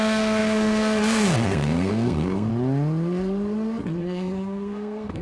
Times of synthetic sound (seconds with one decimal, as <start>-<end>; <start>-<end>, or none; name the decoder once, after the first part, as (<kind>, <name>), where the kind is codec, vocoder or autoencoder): 0.0-2.5 (codec, SNAC); 4.0-5.2

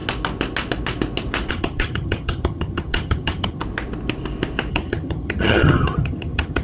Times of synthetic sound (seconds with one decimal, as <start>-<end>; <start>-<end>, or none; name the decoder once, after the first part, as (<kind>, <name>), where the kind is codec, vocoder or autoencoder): 1.5-3.6 (vocoder, HiFi-GAN); 4.7-6.6

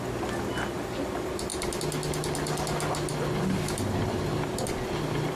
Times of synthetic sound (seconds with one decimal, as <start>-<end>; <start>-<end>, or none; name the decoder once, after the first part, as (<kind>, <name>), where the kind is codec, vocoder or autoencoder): none

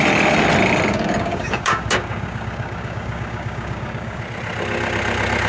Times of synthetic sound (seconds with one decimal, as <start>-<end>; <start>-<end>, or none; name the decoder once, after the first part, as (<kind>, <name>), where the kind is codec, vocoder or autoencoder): 0.9-4.2 (codec, DAC)

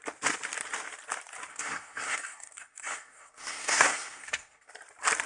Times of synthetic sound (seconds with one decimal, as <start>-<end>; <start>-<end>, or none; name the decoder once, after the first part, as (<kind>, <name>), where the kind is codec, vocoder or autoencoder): 1.5-4.7 (codec, SNAC)

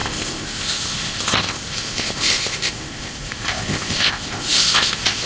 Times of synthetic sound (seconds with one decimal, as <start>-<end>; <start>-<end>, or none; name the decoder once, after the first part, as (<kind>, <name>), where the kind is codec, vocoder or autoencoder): 0.0-5.3 (codec, ZipCodec)

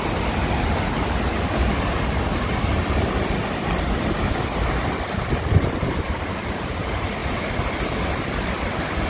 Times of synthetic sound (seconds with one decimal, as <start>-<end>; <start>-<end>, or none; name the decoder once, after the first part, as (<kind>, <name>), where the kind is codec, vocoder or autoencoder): none

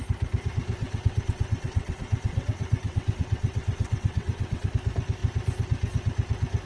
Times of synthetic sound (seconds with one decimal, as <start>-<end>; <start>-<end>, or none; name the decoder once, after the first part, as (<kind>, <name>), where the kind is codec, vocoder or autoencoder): 0.8-4.7 (vocoder, WaveNeXt)